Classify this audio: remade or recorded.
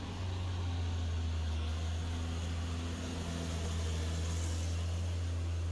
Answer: recorded